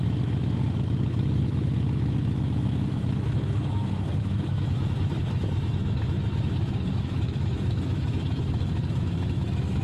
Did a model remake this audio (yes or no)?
yes